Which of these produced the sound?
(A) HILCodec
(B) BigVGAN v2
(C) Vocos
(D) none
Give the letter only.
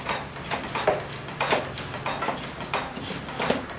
D